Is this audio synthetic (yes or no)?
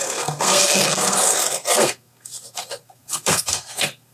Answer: yes